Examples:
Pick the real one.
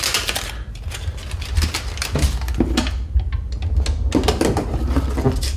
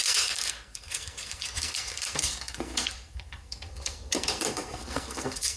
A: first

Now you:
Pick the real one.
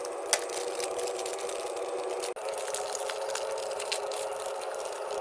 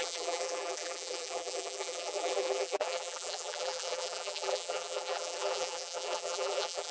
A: first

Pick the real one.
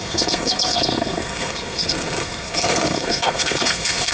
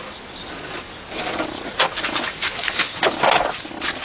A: second